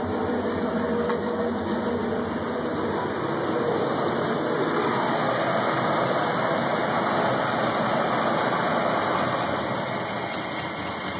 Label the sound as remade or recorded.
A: recorded